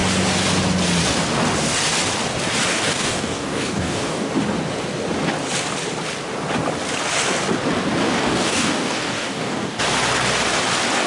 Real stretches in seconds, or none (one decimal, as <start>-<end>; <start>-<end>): 0.0-2.7; 4.3-8.0; 9.8-11.1